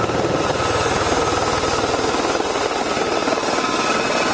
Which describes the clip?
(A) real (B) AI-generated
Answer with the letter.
A